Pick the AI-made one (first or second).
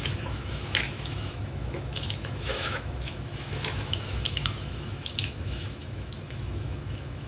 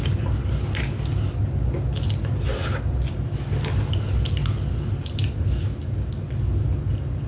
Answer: first